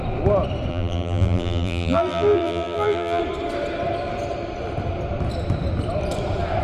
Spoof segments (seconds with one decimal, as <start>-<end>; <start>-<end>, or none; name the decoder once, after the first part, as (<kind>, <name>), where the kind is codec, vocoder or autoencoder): 0.7-3.2 (vocoder, BigVGAN v2)